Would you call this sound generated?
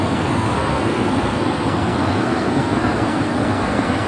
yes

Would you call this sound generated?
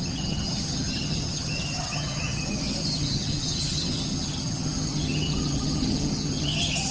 yes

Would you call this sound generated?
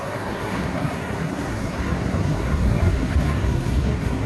yes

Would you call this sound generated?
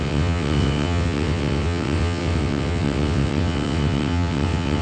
yes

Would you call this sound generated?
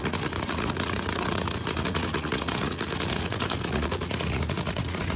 yes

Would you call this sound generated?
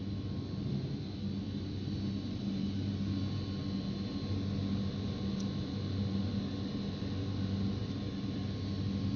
no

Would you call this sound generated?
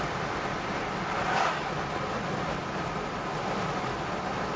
no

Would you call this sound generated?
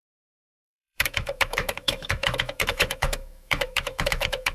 yes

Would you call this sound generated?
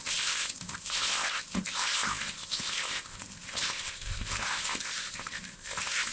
yes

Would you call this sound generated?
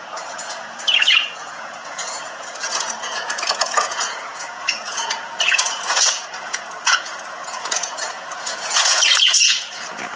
yes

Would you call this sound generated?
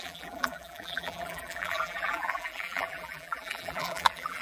yes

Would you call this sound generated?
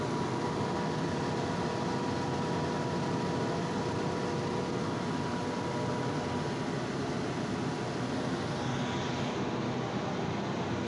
no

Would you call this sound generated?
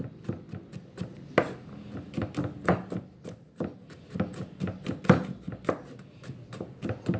no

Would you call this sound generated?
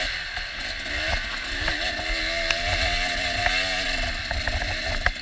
no